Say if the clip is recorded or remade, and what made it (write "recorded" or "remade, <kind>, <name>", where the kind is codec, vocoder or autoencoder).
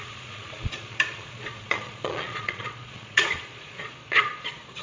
remade, vocoder, Vocos